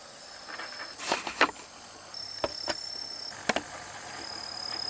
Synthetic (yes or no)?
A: no